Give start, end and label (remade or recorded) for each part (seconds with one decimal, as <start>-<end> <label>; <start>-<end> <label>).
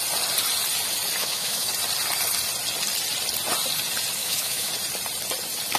0.0-1.2 recorded; 1.2-1.7 remade; 1.7-4.2 recorded; 4.2-4.7 remade; 4.7-5.8 recorded